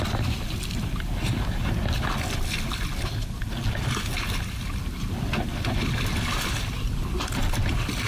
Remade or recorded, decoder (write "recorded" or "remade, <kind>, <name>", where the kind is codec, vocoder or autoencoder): recorded